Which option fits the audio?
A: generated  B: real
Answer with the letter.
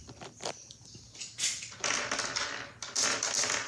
B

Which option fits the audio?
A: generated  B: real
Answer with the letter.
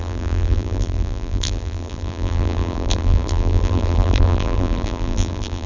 A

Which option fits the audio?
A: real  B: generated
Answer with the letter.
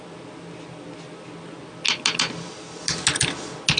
A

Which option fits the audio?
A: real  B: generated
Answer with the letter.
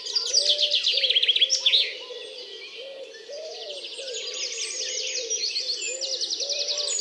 A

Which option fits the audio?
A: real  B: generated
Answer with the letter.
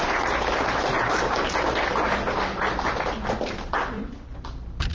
A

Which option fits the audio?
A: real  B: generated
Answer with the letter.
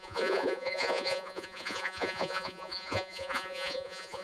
B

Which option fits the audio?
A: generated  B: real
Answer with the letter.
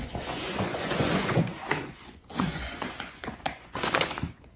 A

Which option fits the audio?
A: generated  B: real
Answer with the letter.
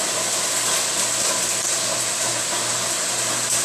B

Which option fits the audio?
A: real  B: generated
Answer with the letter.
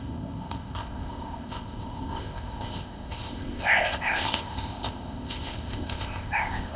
B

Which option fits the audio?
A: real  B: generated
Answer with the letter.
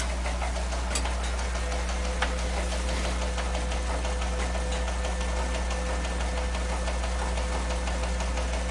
A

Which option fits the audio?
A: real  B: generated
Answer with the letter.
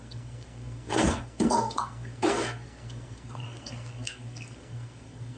B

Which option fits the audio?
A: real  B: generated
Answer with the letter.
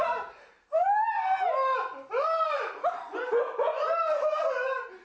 A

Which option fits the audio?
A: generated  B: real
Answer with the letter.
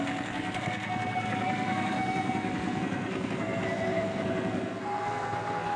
A